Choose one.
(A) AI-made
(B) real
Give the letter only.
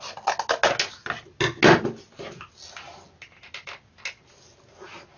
B